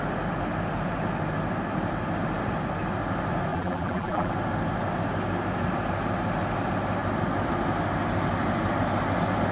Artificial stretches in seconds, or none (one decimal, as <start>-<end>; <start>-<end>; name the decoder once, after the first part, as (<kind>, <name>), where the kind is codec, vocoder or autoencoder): 3.5-4.3 (vocoder, BigVGAN v2)